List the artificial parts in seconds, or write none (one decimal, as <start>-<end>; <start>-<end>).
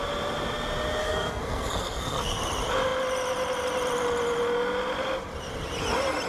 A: 1.0-2.4